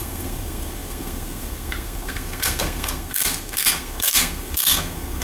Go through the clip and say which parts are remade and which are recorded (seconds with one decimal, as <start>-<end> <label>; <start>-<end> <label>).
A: 0.0-5.2 remade